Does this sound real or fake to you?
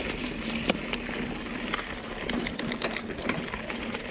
real